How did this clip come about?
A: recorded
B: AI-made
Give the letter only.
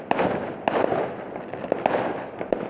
A